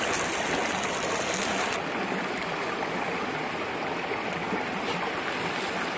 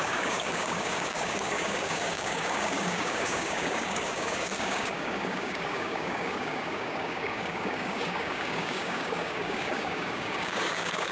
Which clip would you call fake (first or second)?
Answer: second